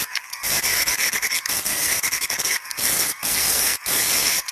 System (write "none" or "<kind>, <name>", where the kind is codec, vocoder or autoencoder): codec, SNAC